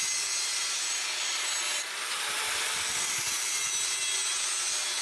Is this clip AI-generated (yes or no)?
no